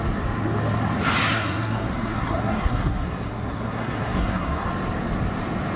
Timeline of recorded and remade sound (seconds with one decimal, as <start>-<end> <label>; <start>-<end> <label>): 0.0-1.2 recorded; 1.2-4.7 remade; 4.7-5.8 recorded